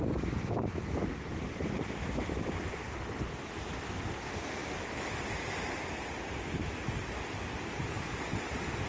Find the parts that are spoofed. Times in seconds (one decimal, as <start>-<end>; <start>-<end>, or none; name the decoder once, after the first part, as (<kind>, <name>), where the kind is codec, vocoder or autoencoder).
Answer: none